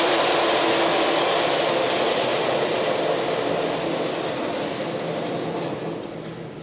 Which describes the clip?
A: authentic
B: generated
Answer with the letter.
A